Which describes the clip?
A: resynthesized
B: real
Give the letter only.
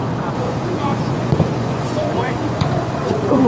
A